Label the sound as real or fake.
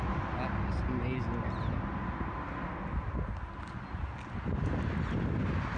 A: real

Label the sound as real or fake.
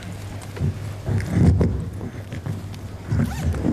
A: real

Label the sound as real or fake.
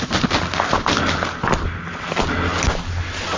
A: real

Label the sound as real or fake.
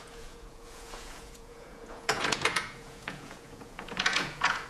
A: fake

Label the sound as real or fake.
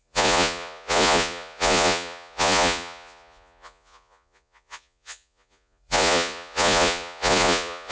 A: fake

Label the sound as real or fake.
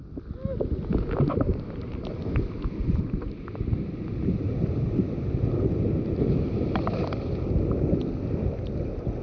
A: real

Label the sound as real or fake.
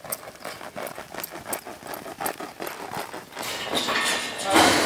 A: real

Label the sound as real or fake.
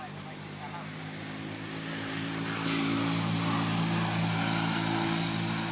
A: real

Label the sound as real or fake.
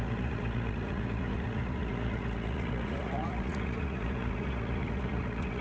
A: fake